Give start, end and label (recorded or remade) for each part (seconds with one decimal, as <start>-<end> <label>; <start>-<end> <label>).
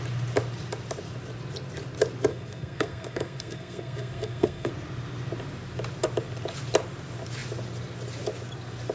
0.0-2.3 recorded; 2.3-4.7 remade; 4.7-8.9 recorded